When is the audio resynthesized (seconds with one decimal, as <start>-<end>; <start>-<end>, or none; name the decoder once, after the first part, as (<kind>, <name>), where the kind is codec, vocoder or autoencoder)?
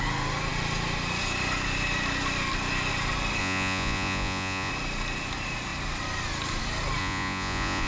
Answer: 3.4-4.7 (vocoder, Vocos); 7.0-7.9